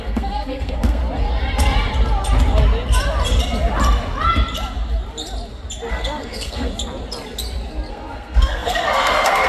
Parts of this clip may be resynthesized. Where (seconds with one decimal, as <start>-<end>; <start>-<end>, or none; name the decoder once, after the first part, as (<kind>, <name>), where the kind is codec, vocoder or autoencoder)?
0.0-1.0 (codec, SNAC); 5.9-6.7; 7.9-9.5